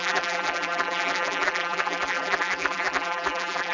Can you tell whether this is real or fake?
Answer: fake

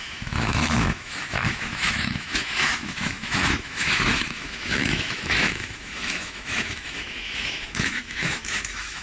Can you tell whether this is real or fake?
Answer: fake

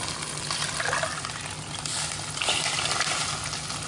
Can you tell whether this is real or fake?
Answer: real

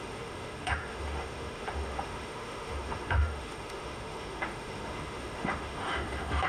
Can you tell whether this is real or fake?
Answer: fake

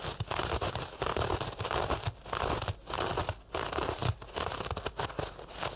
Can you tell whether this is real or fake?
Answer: real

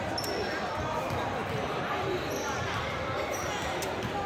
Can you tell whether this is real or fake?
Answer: real